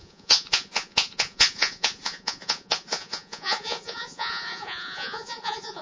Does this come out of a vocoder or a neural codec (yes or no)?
yes